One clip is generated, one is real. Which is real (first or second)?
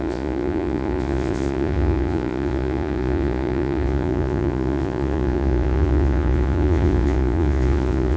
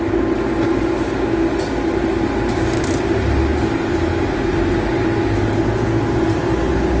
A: second